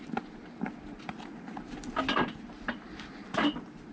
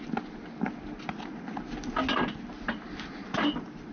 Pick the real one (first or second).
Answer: second